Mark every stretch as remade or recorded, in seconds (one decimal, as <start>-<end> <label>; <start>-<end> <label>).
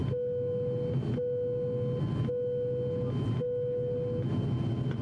0.0-5.0 recorded